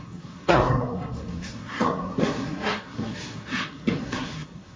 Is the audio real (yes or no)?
no